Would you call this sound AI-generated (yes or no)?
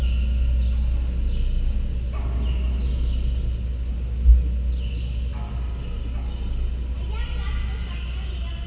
no